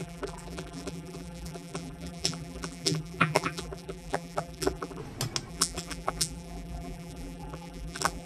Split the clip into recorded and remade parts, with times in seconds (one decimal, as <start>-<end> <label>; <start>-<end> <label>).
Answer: 0.0-5.0 remade; 5.0-5.5 recorded; 5.5-8.3 remade

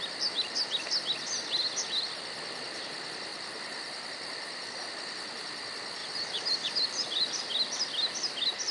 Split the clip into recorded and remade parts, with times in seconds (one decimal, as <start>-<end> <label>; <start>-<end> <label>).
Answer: 0.0-6.0 recorded; 6.0-7.4 remade; 7.4-8.7 recorded

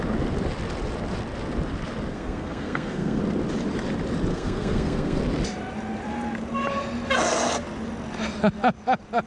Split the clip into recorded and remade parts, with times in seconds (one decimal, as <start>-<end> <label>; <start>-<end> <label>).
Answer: 0.0-2.1 recorded; 2.1-3.2 remade; 3.2-4.3 recorded; 4.3-5.2 remade; 5.2-9.3 recorded

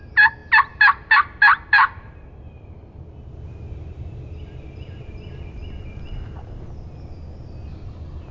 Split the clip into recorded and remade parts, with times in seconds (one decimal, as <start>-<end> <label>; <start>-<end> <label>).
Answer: 0.0-8.3 recorded

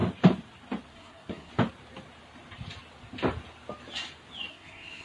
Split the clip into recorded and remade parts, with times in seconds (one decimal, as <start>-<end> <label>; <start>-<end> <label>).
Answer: 0.0-0.9 recorded; 0.9-1.5 remade; 1.5-4.5 recorded; 4.5-5.0 remade